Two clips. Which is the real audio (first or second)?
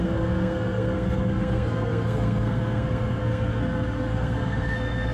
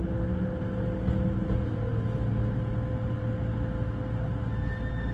second